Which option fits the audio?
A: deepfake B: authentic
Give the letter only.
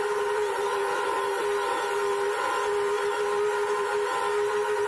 A